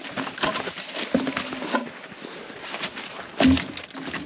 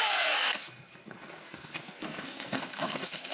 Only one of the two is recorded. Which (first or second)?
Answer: first